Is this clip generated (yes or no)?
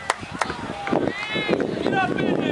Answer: no